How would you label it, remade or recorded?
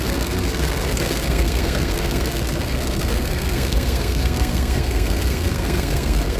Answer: remade